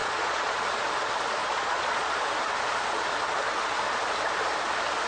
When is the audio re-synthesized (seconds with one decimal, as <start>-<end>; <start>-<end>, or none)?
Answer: 0.0-0.6; 1.4-2.1